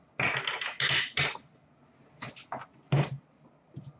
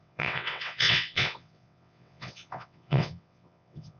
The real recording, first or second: first